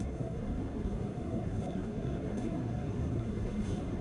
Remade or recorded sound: remade